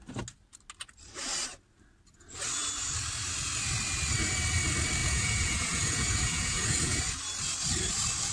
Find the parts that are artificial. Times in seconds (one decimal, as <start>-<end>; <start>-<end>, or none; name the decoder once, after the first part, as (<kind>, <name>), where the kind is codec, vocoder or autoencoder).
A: 5.0-7.0 (vocoder, Vocos)